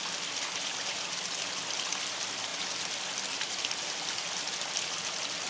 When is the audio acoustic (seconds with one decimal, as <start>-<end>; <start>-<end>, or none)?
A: 0.0-1.9; 2.5-3.5